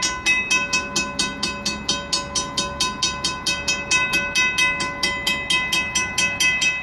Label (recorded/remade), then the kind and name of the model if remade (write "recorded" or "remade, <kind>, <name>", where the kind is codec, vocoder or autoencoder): recorded